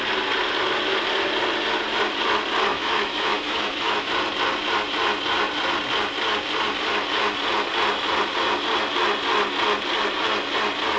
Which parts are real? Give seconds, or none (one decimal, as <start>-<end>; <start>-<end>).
0.0-2.7; 4.1-11.0